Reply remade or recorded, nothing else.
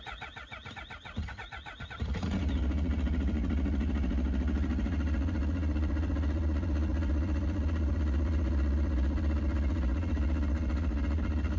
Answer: remade